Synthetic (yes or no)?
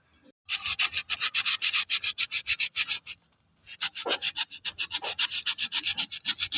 no